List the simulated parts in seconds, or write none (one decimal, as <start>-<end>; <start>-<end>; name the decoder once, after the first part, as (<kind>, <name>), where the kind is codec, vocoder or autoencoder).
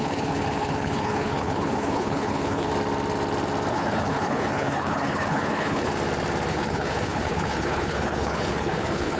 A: 0.0-2.7 (codec, HILCodec); 3.7-5.9; 6.5-9.2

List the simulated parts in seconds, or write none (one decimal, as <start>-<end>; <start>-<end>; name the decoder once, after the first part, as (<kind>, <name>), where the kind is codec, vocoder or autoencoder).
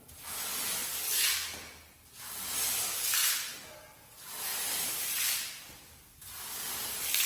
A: 4.5-6.7 (vocoder, BigVGAN v2)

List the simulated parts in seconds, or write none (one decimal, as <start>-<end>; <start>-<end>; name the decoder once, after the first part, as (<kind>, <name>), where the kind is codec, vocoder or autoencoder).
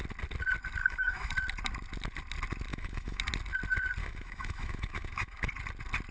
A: 0.8-1.3 (autoencoder, DAC-VAE); 2.7-3.2; 4.0-5.5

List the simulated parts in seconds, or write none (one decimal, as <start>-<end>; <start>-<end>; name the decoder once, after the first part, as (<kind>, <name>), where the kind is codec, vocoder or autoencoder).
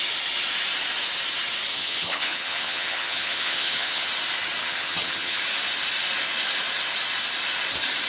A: 1.7-4.1 (vocoder, HiFi-GAN); 4.6-5.4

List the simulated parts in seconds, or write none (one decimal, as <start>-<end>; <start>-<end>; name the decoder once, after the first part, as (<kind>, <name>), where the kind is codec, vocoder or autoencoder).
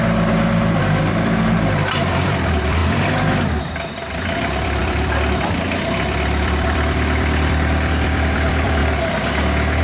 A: 0.0-8.8 (vocoder, BigVGAN v2)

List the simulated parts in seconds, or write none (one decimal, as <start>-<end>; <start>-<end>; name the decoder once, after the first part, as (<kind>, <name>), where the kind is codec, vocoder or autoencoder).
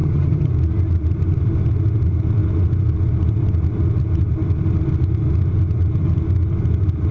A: 0.0-0.5 (vocoder, HiFi-GAN)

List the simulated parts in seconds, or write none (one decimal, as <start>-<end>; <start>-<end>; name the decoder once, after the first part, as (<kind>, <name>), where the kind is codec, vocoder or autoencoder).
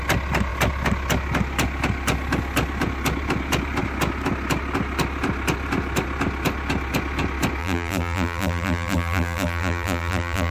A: 7.6-10.5 (vocoder, BigVGAN v2)